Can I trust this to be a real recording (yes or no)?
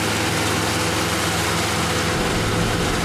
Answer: yes